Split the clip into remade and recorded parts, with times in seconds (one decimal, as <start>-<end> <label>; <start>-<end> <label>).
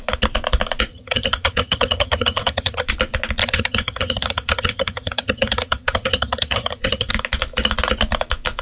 0.0-0.9 recorded; 0.9-2.9 remade; 2.9-3.4 recorded; 3.4-7.1 remade; 7.1-8.6 recorded